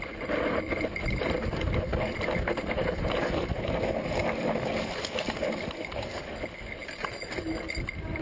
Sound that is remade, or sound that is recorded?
recorded